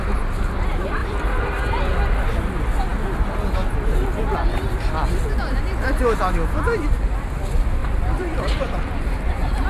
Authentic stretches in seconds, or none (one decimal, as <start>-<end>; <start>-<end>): 0.0-1.0; 1.6-7.8